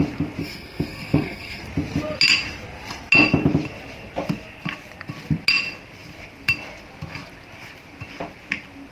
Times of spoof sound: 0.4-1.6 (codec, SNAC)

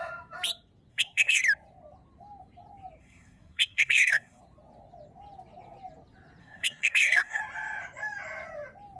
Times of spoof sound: 0.9-1.4 (codec, SNAC); 3.0-4.4; 6.4-7.4

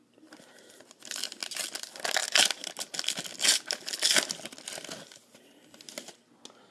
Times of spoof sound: none